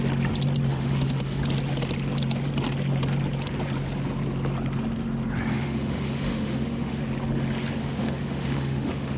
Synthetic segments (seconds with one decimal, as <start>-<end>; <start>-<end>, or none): 0.7-1.4; 5.5-7.0; 7.8-9.2